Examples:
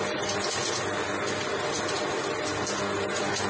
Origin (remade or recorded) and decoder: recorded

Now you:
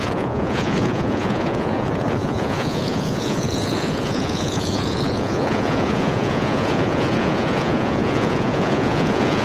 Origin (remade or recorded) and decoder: remade, vocoder, Vocos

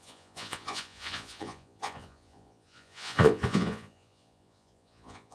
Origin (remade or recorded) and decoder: remade, vocoder, Vocos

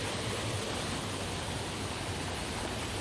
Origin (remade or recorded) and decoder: recorded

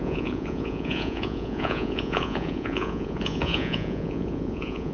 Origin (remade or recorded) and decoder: remade, vocoder, Vocos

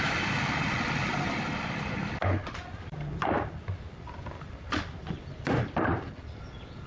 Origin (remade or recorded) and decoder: recorded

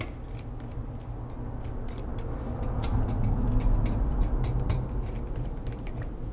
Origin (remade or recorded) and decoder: recorded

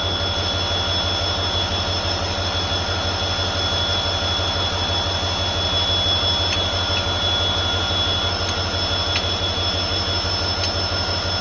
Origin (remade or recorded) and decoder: recorded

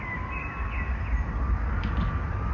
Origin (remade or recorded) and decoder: recorded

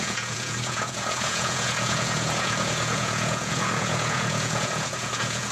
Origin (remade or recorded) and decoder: remade, vocoder, Vocos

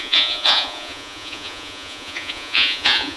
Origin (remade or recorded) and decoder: remade, vocoder, Vocos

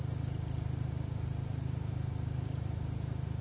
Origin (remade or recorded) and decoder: recorded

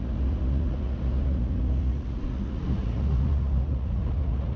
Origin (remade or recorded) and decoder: remade, vocoder, Vocos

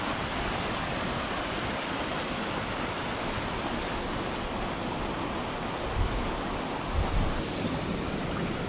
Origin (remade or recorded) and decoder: recorded